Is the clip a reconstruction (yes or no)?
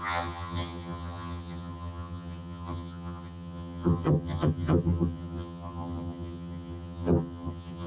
yes